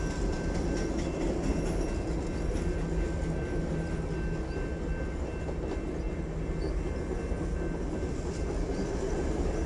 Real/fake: real